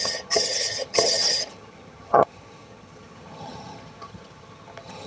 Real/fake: fake